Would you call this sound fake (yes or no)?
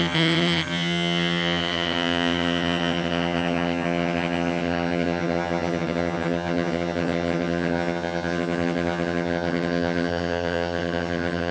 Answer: yes